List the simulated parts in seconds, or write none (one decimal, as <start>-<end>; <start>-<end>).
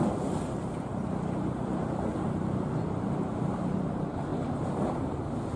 0.0-0.9; 2.8-5.6